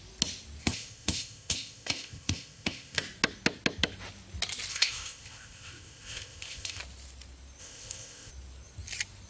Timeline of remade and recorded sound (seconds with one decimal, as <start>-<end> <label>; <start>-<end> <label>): 0.0-0.6 recorded; 0.6-3.0 remade; 3.0-4.7 recorded; 4.7-6.8 remade; 6.8-7.6 recorded; 7.6-8.3 remade; 8.3-9.3 recorded